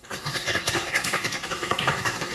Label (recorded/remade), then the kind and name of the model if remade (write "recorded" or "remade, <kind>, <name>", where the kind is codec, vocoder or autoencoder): remade, codec, SNAC